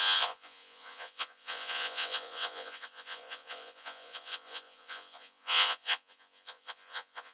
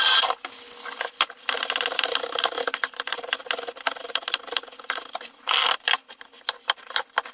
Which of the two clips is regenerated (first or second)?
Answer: first